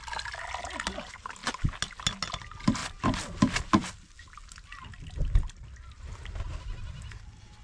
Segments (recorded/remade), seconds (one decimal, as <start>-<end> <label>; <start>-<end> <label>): 0.0-7.6 recorded